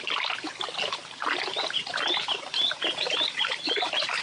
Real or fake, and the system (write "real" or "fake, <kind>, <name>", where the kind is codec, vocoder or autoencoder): real